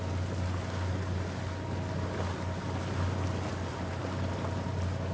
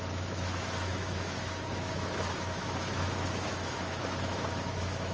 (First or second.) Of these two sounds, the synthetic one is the second